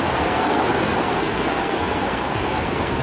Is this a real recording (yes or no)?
no